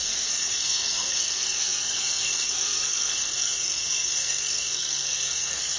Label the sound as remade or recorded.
remade